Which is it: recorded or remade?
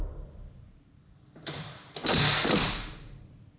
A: recorded